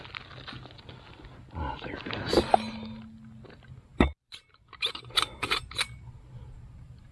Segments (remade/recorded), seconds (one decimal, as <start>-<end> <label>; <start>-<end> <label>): 0.0-7.1 recorded